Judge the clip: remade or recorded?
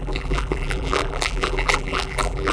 remade